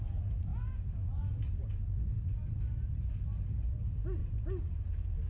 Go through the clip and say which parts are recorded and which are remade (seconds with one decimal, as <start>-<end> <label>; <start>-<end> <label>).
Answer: 0.0-5.3 recorded